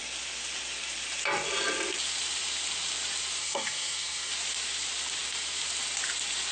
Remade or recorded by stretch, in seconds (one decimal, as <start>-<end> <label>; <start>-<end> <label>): 0.0-3.4 recorded; 3.4-4.3 remade; 4.3-6.5 recorded